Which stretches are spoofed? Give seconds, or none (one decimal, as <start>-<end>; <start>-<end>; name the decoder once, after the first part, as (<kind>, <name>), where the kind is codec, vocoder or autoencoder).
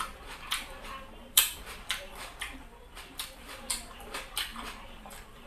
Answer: 0.0-4.5 (vocoder, BigVGAN v2); 5.0-5.5